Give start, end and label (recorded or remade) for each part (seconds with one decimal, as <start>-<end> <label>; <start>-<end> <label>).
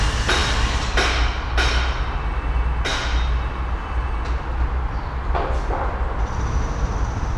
0.0-7.4 recorded